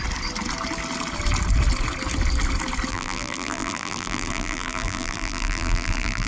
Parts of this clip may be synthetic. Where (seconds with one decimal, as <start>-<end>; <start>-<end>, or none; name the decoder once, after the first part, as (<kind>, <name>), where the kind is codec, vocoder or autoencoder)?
2.9-6.3 (vocoder, BigVGAN v2)